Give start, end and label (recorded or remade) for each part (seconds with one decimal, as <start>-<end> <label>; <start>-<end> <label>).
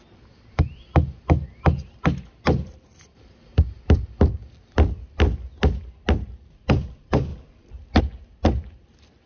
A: 0.0-9.3 recorded